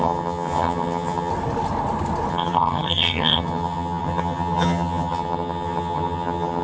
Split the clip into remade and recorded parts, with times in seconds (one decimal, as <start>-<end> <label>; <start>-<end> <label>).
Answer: 0.0-1.3 remade; 1.3-2.3 recorded; 2.3-6.6 remade